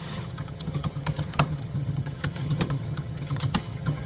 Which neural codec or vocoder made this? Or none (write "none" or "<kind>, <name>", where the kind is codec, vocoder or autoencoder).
vocoder, HiFi-GAN